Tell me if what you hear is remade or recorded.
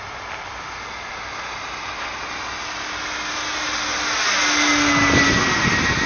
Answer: recorded